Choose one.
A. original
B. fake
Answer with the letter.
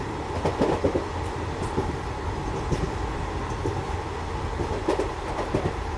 A